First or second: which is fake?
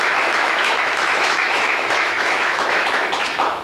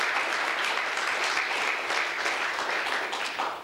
first